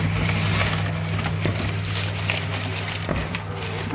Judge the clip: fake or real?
real